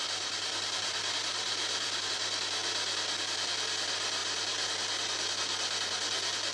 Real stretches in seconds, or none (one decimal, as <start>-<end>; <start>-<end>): 2.1-6.5